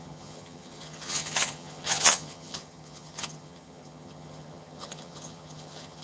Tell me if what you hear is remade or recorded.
remade